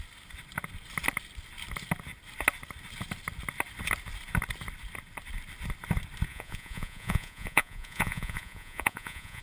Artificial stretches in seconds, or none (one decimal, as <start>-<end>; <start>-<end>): 6.3-9.4

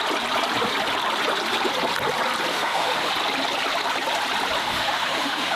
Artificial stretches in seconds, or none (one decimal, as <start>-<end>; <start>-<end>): 2.5-3.1; 4.6-5.6

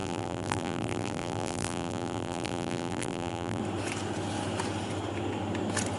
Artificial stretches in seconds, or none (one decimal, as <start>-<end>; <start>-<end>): 0.0-3.6

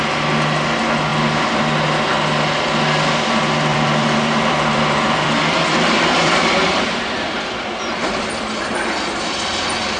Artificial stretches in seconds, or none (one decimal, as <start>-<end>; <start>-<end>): 3.7-8.3

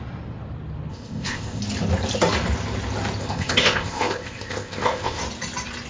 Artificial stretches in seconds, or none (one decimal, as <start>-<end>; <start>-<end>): 0.9-1.6; 3.2-5.2

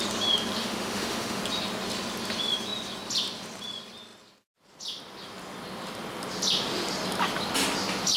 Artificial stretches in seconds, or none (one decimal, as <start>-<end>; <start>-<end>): 0.6-1.4

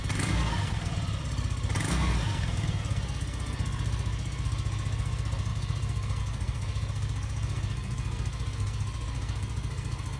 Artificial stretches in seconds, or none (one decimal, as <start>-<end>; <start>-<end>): 0.0-0.9; 1.9-10.2

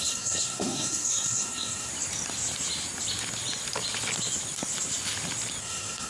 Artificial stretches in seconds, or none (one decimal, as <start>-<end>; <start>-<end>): 0.0-1.9; 5.6-6.1